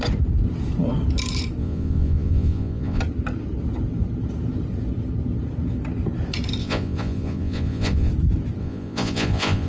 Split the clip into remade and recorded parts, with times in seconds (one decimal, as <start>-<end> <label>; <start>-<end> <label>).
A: 0.0-1.6 recorded; 1.6-3.0 remade; 3.0-6.6 recorded; 6.6-8.1 remade; 8.1-8.6 recorded; 8.6-9.7 remade